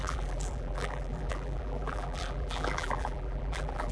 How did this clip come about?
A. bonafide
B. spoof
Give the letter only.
B